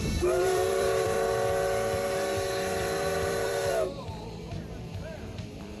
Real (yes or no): no